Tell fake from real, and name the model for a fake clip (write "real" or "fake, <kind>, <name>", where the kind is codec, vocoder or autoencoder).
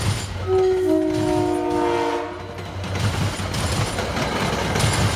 real